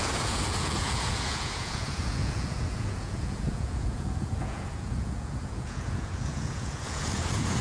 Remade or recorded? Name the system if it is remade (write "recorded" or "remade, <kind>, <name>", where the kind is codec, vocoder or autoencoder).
remade, vocoder, Vocos